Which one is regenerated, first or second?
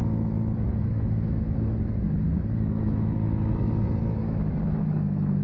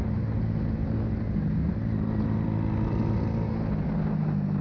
first